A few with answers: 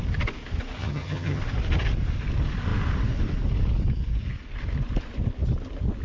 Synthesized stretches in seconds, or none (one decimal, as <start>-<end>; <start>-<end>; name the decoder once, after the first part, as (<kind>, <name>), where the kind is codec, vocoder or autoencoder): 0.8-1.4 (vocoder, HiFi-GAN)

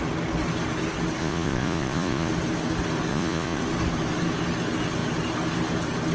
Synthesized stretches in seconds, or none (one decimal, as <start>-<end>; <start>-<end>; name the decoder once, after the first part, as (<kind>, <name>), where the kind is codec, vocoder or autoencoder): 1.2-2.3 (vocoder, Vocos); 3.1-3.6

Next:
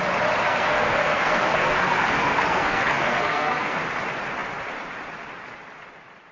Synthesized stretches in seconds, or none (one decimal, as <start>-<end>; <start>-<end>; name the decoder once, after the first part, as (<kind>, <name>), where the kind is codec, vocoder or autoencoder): 0.4-3.8 (codec, SNAC)

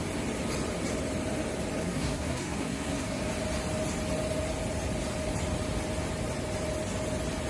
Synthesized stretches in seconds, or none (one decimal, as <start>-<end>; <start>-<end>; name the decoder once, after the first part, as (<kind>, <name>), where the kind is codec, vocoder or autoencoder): 1.8-3.2 (codec, SNAC)